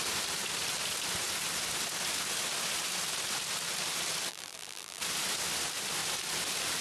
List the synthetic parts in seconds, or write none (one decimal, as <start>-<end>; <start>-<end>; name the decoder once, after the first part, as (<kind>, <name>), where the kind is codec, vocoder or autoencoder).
4.3-5.0 (vocoder, BigVGAN v2)